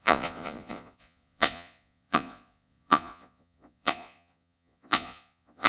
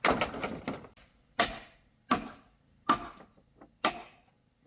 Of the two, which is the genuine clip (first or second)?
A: second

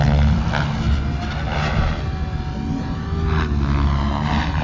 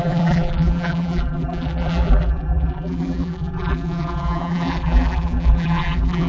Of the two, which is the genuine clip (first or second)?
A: first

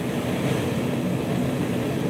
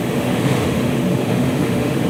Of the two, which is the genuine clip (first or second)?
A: first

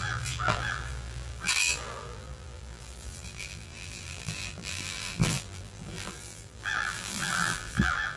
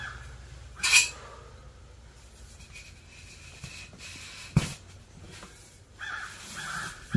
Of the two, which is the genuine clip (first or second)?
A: second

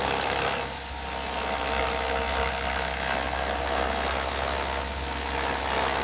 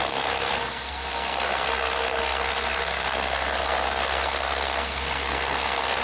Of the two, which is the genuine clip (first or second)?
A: first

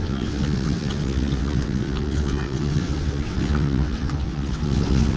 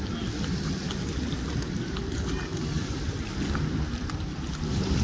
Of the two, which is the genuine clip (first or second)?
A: second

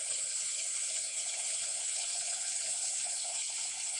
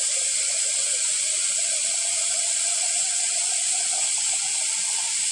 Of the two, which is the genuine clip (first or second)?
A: second